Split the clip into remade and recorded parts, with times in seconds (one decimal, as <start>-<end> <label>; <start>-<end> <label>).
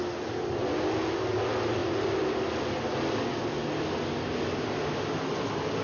0.0-5.8 recorded